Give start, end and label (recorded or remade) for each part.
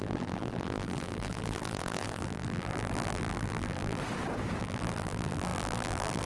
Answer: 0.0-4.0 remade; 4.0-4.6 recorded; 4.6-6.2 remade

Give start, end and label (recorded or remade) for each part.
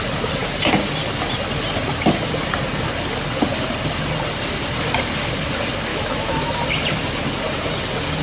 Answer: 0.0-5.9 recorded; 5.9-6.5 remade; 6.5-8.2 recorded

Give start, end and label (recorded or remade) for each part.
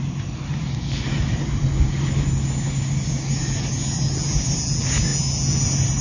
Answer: 0.0-6.0 recorded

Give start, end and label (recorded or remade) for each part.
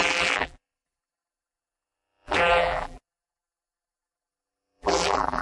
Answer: 0.0-5.4 remade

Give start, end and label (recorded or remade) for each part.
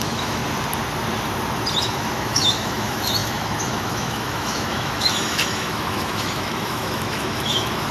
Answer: 0.0-0.4 remade; 0.4-1.8 recorded; 1.8-7.9 remade